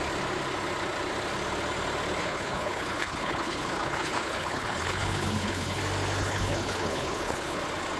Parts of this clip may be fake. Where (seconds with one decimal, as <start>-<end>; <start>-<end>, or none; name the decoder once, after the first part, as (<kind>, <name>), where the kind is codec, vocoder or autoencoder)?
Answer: 2.2-5.8 (codec, HILCodec); 6.2-7.6